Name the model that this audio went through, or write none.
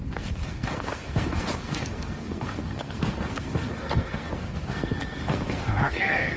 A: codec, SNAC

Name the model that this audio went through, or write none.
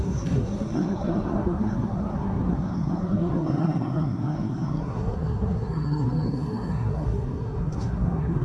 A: codec, SNAC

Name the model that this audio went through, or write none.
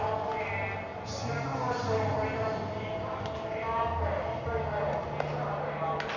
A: none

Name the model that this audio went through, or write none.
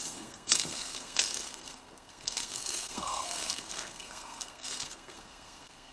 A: codec, SNAC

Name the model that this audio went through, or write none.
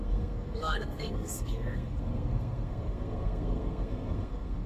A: codec, SNAC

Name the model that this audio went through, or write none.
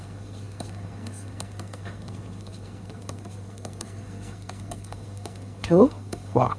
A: codec, SNAC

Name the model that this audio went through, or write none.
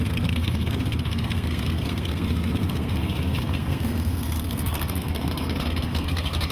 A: codec, SNAC